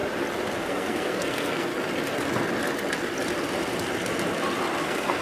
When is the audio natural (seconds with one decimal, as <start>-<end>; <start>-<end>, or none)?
0.0-0.6; 1.7-4.8